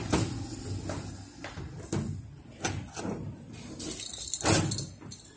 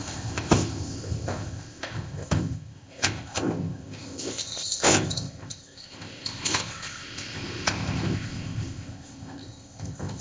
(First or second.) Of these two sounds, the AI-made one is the second